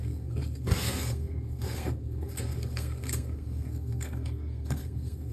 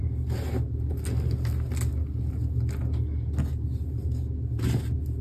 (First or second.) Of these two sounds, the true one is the second